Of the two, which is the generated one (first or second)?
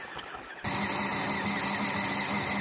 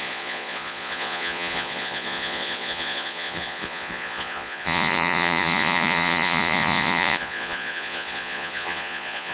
second